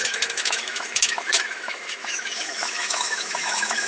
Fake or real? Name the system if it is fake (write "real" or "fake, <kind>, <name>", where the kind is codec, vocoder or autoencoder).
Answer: fake, autoencoder, DAC-VAE